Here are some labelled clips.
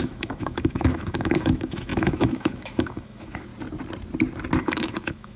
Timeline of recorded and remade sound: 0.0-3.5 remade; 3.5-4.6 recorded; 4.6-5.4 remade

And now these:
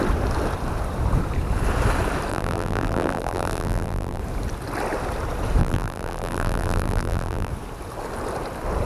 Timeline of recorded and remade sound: 0.0-2.3 recorded; 2.3-4.2 remade; 4.2-5.6 recorded; 5.6-7.5 remade; 7.5-8.9 recorded

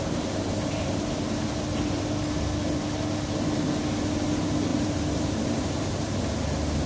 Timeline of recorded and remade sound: 0.0-4.7 recorded; 4.7-5.8 remade; 5.8-6.9 recorded

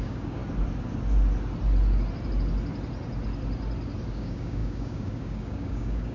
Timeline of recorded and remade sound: 0.0-0.4 remade; 0.4-4.1 recorded; 4.1-6.1 remade